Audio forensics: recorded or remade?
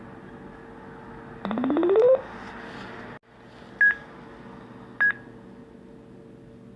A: recorded